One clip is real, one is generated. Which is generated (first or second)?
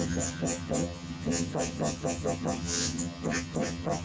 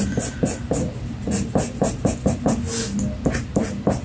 first